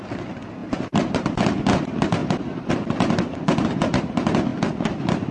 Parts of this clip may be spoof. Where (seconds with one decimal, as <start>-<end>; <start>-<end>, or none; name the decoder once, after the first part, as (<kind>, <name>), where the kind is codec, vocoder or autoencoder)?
0.6-1.3 (vocoder, BigVGAN v2); 2.2-2.7